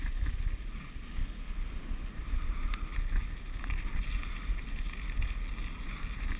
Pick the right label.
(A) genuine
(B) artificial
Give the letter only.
A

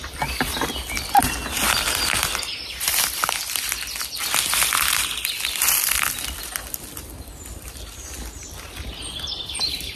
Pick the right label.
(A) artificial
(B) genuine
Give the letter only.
B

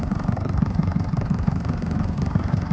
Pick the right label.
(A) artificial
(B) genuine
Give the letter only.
A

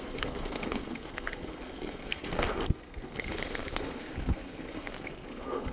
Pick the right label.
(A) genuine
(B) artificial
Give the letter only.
B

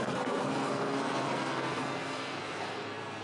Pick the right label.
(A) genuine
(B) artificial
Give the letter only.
B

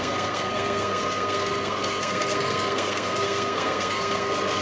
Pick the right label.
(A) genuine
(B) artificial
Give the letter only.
B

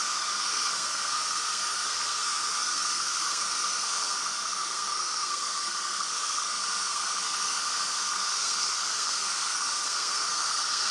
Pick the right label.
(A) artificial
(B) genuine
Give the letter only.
A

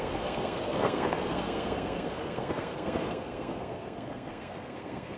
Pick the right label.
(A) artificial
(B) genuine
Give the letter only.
A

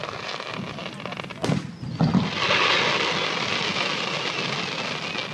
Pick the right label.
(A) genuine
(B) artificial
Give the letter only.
A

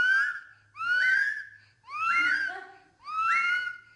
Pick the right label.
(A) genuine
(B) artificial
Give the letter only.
A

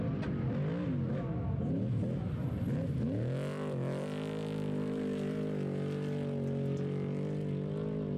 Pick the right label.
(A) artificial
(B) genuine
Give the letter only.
B